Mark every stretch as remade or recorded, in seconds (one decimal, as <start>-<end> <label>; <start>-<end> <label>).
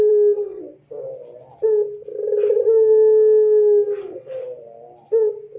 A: 0.0-0.6 remade; 0.6-4.0 recorded; 4.0-4.4 remade; 4.4-5.6 recorded